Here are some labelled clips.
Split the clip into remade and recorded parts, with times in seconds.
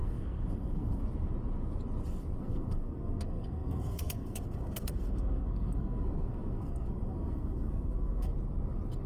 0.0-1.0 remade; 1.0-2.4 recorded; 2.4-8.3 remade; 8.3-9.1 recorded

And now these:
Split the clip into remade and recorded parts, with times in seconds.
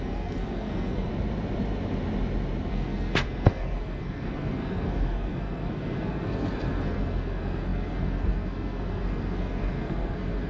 0.0-1.1 remade; 1.1-2.7 recorded; 2.7-10.5 remade